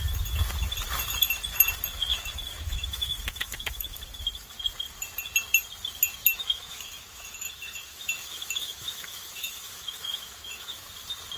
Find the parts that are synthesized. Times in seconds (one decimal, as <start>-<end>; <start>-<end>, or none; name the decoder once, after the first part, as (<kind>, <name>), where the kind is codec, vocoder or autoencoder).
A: 2.1-4.0 (autoencoder, DAC-VAE); 6.3-10.9